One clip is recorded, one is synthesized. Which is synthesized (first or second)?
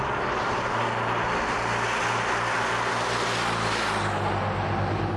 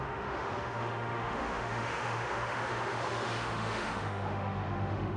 second